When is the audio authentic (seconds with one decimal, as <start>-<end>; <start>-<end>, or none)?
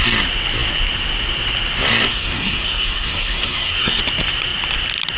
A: 0.0-2.1; 4.0-5.2